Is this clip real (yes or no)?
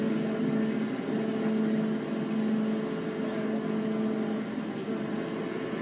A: yes